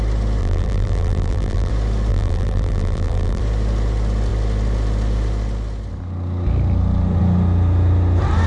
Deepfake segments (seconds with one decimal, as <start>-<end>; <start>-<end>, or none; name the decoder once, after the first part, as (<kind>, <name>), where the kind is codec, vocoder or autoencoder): 0.4-1.7 (vocoder, BigVGAN v2); 2.1-3.4